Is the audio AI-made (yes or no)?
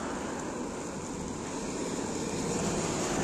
no